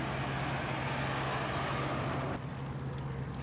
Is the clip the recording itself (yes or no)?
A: yes